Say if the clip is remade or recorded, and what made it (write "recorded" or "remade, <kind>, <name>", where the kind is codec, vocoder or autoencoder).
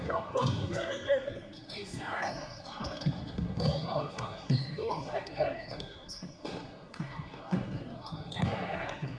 remade, codec, SNAC